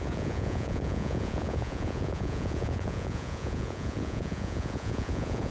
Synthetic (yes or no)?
yes